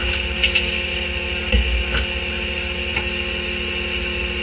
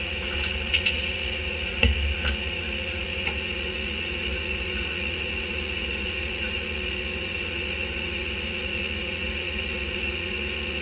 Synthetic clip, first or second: second